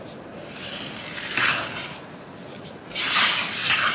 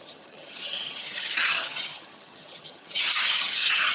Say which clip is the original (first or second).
first